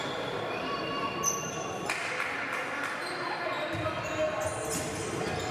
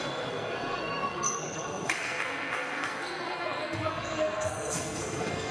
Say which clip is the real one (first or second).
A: first